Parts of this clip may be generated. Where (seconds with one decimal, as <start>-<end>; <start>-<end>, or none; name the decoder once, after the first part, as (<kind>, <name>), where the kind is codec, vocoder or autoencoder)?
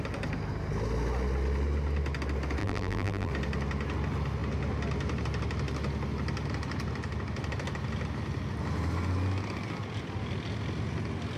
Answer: 2.6-3.3 (vocoder, BigVGAN v2)